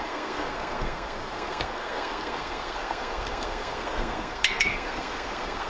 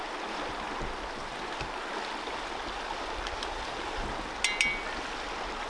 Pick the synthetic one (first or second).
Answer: first